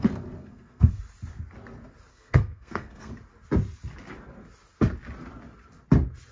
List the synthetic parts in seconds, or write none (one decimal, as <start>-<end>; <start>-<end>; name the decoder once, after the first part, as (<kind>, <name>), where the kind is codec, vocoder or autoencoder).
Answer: 0.4-1.0 (codec, SNAC); 2.1-3.1